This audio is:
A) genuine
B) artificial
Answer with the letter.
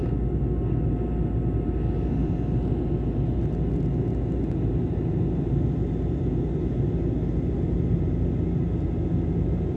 A